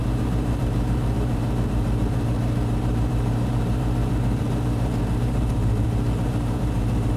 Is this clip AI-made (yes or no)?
yes